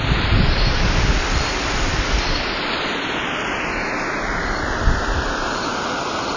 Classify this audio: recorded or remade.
recorded